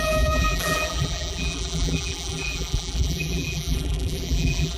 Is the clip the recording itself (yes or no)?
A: no